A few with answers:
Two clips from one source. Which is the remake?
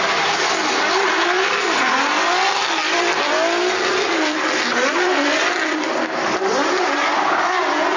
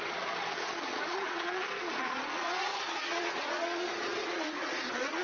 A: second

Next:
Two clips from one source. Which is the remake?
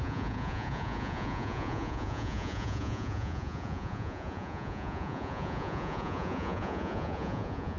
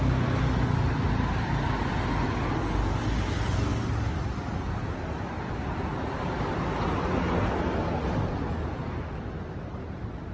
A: first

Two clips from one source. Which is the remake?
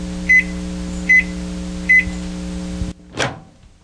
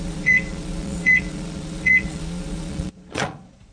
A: second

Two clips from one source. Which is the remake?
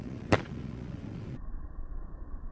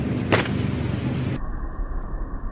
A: first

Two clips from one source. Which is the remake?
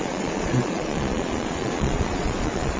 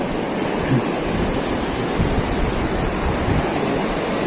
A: first